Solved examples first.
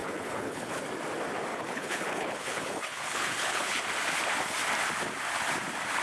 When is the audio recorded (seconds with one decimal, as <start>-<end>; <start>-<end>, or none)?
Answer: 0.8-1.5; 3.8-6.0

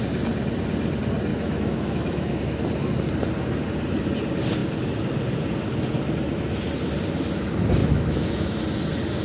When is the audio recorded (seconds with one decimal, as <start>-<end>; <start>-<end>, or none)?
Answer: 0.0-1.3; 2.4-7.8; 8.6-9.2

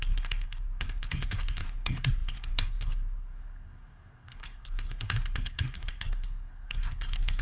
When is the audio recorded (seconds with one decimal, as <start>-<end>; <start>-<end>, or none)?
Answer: none

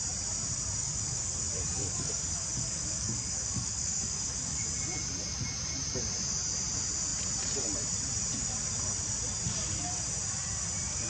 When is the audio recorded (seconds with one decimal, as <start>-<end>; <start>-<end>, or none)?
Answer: 0.0-0.8; 1.4-1.8; 4.7-11.1

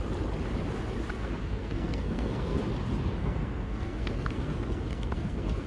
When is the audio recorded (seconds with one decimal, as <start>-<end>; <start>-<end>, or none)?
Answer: 0.0-1.1; 2.6-3.2

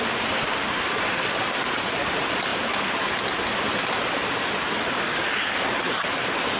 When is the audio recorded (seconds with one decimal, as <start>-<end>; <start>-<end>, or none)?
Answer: 0.0-6.6